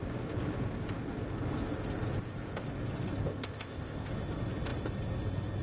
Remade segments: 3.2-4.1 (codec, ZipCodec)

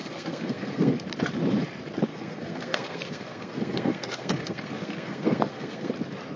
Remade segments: 0.0-0.9 (codec, SNAC); 2.1-5.9

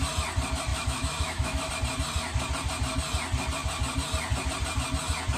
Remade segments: 0.7-1.7 (autoencoder, DAC-VAE)

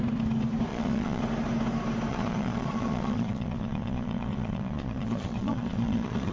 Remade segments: 0.7-1.2 (vocoder, Vocos); 2.1-6.3

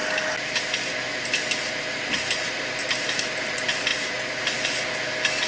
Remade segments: none

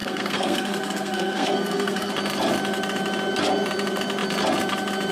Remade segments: 0.0-2.1 (codec, SNAC)

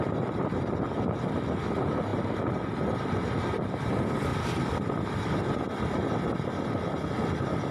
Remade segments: 4.3-5.3 (vocoder, BigVGAN v2)

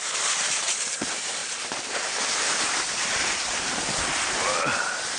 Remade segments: 1.4-3.9 (vocoder, BigVGAN v2)